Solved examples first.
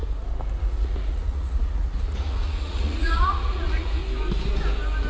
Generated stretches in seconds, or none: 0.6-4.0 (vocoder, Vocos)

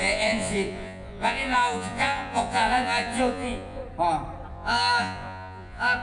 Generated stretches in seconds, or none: 0.0-3.8 (vocoder, Vocos); 4.5-6.0

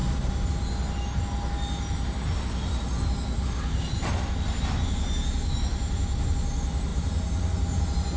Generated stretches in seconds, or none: none

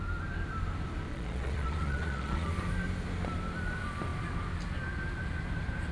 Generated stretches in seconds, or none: 1.1-2.5 (vocoder, Vocos)

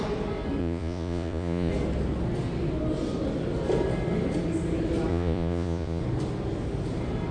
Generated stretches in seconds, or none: 0.6-1.7 (vocoder, Vocos); 5.1-6.0